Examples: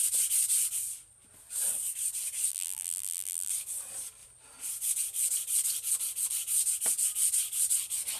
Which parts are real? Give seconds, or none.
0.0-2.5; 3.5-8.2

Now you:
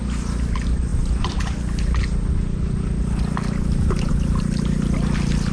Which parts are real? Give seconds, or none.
0.0-5.5

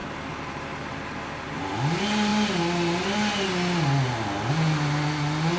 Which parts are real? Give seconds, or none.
0.6-5.6

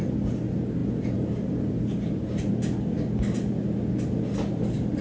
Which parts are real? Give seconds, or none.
0.0-5.0

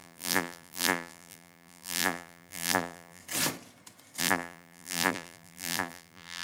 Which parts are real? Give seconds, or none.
3.2-4.2

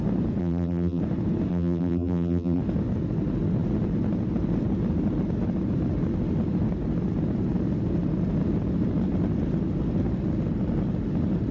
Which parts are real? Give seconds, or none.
0.0-0.4; 1.0-1.5; 2.6-11.5

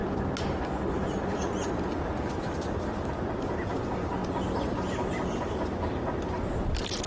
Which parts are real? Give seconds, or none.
0.0-3.3

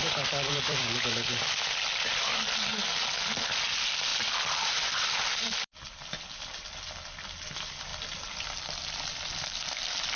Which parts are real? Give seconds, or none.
2.7-3.5; 7.9-8.4